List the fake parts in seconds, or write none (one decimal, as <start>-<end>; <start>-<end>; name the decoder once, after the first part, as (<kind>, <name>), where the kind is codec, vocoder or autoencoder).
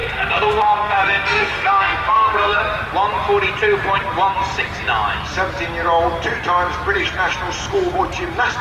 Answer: 0.0-2.6 (codec, SNAC)